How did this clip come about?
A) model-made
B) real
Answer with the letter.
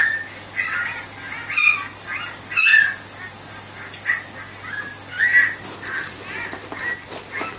B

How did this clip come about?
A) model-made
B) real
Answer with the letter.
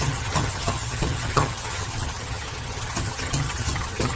A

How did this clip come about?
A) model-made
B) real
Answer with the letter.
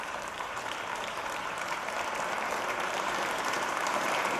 A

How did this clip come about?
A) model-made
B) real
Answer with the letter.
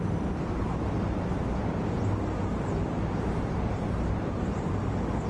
A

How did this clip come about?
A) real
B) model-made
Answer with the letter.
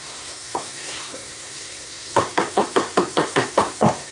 B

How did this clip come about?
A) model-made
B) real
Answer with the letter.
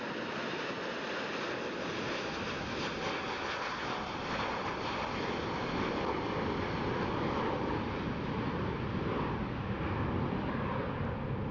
B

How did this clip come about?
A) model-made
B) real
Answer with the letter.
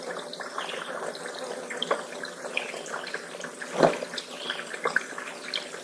B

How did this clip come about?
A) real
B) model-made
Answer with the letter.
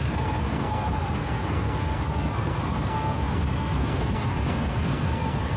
B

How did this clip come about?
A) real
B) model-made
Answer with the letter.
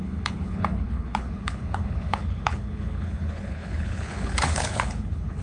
B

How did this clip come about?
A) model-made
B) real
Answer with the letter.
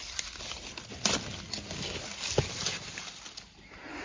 B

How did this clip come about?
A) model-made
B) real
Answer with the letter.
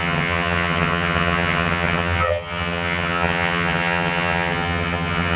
A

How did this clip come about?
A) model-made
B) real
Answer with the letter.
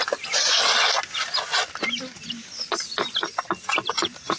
B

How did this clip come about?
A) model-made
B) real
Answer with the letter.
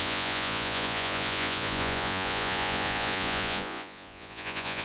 A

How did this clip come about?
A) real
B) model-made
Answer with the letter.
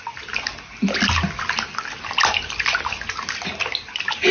A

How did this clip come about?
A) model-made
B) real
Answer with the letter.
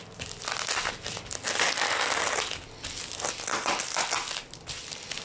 B